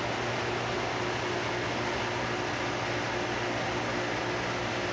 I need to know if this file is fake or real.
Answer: real